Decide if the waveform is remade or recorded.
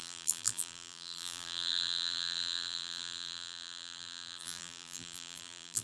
remade